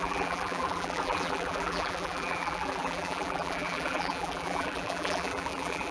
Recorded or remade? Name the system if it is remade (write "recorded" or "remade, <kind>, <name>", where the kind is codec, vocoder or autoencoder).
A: remade, vocoder, BigVGAN v2